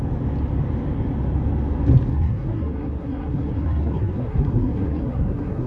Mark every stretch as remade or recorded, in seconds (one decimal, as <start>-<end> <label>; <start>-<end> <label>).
0.0-2.1 recorded; 2.1-5.7 remade